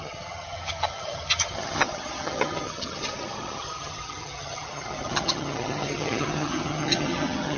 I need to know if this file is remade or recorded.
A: remade